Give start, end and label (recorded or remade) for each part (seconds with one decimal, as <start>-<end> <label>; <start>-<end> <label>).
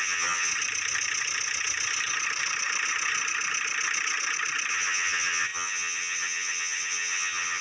0.0-0.5 remade; 0.5-4.7 recorded; 4.7-7.6 remade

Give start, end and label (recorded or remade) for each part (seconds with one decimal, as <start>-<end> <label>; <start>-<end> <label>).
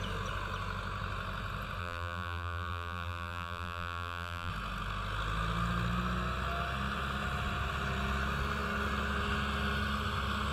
0.0-1.8 recorded; 1.8-4.5 remade; 4.5-10.5 recorded